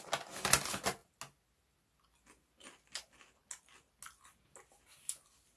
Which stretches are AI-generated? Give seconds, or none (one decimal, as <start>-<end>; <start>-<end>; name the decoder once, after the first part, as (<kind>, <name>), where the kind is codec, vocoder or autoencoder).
none